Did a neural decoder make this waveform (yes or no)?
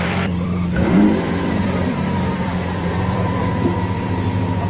yes